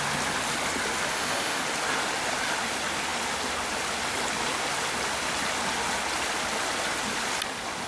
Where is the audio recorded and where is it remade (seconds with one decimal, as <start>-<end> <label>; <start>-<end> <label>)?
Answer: 0.0-1.1 recorded; 1.1-1.6 remade; 1.6-7.9 recorded